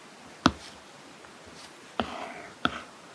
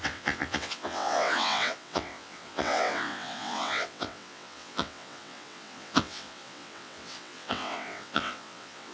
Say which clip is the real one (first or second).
first